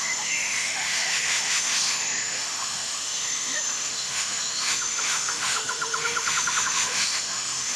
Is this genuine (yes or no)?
no